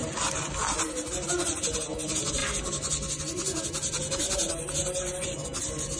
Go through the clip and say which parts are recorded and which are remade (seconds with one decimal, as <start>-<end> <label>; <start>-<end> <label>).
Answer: 0.0-6.0 recorded